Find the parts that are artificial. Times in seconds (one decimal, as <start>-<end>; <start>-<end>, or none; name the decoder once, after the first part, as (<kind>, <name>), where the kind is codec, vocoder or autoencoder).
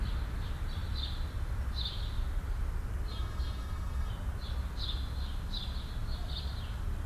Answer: 3.1-4.1 (autoencoder, DAC-VAE)